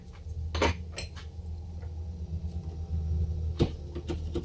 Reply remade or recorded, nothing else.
recorded